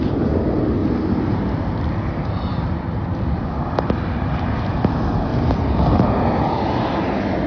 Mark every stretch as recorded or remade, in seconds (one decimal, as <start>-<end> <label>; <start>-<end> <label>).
0.0-0.8 recorded; 0.8-4.4 remade; 4.4-7.5 recorded